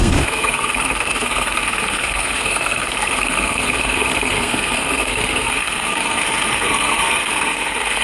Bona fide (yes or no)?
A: no